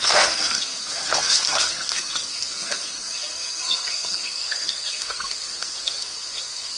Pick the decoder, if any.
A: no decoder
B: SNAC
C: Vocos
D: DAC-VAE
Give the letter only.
B